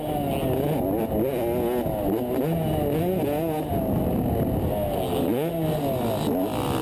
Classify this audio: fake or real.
real